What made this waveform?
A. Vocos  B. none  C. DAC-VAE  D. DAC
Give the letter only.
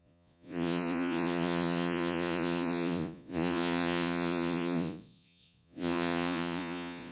A